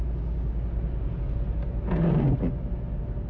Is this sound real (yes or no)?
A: yes